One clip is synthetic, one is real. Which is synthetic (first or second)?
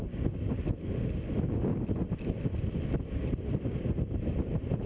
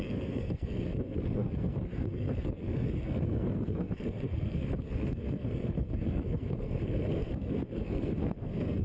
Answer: second